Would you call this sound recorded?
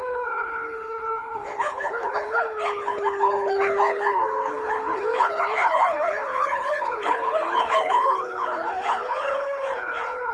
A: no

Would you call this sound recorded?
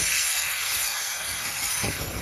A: no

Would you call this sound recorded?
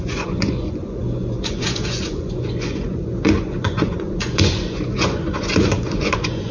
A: no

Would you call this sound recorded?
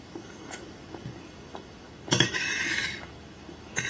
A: no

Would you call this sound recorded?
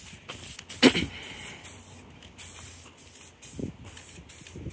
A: yes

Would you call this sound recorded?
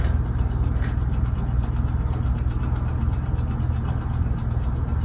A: yes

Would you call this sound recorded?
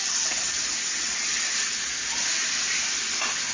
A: yes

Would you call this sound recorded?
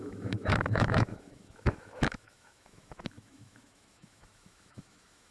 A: no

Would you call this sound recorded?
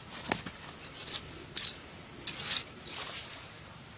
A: yes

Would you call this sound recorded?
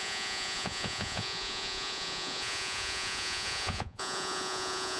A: no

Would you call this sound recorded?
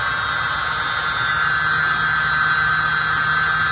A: yes